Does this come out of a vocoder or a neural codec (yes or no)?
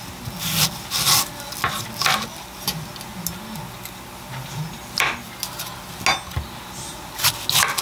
no